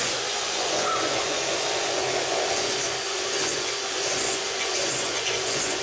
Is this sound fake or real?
fake